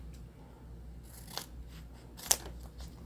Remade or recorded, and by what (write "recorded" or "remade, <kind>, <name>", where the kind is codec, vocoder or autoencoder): recorded